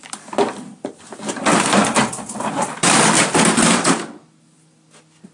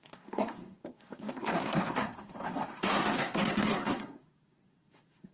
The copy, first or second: second